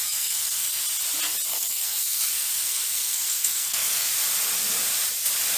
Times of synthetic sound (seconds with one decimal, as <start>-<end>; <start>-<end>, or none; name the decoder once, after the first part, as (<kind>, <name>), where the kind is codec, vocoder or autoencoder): 0.0-0.8 (codec, SNAC); 1.5-4.1